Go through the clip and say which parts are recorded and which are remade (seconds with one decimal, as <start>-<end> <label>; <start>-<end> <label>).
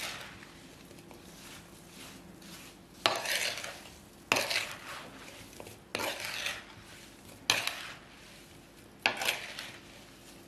0.0-10.5 recorded